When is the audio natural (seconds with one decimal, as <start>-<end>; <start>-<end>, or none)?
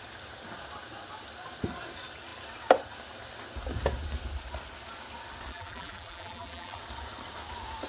0.0-5.5; 6.8-7.9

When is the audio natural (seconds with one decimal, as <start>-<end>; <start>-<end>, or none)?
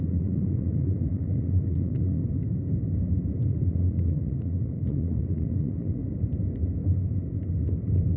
2.2-3.4; 6.0-8.2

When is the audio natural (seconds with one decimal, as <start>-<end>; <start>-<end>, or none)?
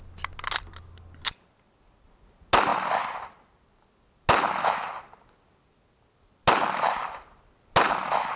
0.0-8.4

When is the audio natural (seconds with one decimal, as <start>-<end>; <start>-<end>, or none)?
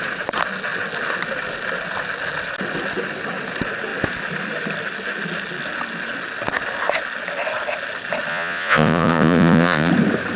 0.0-8.3; 9.9-10.4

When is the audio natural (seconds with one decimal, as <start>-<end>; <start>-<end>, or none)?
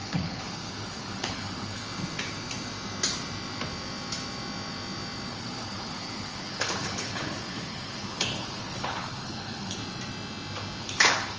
1.8-5.3; 9.8-10.8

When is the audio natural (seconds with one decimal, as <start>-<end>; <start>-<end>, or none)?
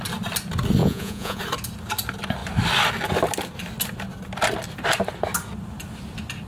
0.0-0.8; 1.4-6.5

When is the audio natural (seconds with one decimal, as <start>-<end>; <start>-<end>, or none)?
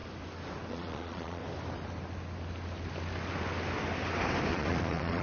0.0-0.7; 1.4-4.5